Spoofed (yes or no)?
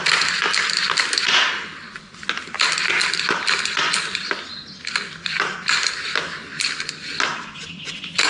no